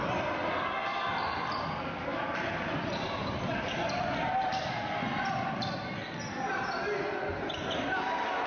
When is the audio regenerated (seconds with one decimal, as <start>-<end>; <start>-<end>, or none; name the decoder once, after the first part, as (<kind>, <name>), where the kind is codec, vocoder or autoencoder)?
0.8-5.5 (vocoder, BigVGAN v2)